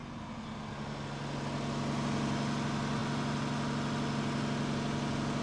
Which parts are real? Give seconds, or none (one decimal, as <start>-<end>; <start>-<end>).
0.0-5.4

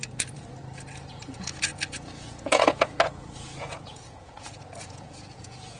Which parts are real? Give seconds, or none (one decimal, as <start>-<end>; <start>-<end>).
0.0-1.1

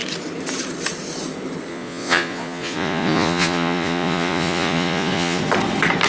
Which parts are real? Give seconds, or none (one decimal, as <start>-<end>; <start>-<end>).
0.0-1.7; 5.4-6.1

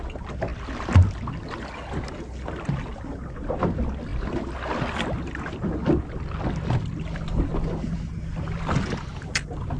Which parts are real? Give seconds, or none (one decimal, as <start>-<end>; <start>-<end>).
0.0-9.8

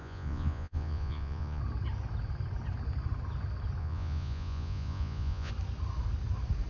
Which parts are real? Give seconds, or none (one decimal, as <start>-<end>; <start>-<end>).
1.6-3.8; 5.5-6.7

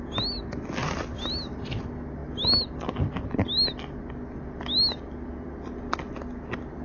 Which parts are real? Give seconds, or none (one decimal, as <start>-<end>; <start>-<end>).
0.0-6.8

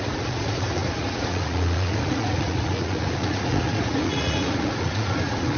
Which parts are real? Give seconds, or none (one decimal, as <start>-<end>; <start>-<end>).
none

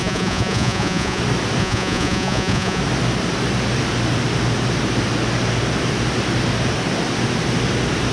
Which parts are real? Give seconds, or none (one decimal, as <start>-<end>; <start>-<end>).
1.2-1.6; 2.8-8.1